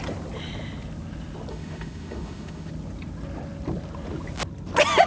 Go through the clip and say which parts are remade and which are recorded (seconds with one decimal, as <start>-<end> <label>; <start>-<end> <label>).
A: 0.0-1.5 recorded; 1.5-2.7 remade; 2.7-5.1 recorded